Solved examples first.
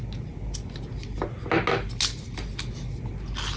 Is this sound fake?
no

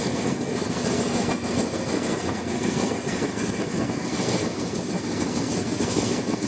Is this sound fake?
yes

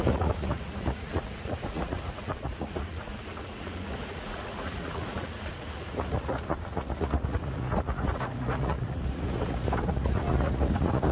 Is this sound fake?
yes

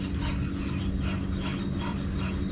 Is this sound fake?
no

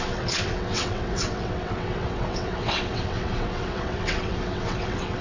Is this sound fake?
yes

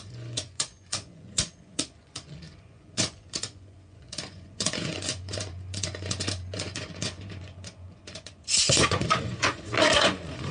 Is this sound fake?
yes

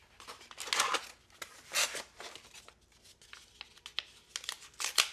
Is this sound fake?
no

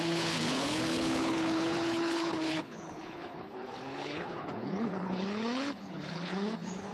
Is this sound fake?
yes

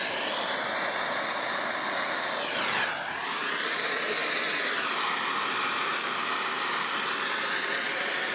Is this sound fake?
no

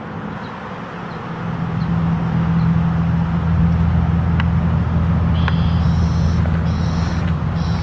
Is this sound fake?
no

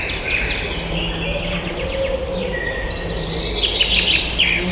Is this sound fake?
no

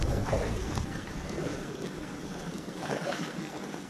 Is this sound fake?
yes